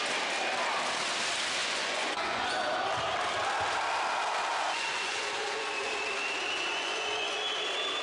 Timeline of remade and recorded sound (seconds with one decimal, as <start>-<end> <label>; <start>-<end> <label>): 0.0-1.6 recorded; 1.6-2.6 remade; 2.6-4.5 recorded; 4.5-5.9 remade; 5.9-6.7 recorded; 6.7-7.4 remade; 7.4-8.0 recorded